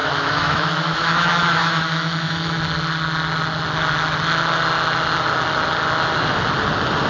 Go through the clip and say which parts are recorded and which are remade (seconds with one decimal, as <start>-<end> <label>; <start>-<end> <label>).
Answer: 0.0-2.6 remade; 2.6-7.1 recorded